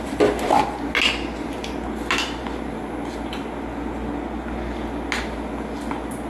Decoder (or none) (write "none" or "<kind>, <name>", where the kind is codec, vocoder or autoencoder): none